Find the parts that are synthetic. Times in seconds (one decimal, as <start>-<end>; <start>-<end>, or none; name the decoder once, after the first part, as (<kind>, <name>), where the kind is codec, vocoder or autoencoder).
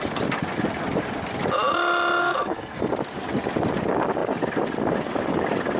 2.2-2.9 (codec, SNAC)